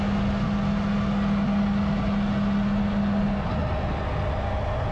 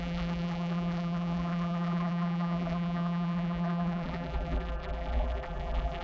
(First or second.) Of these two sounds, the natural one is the first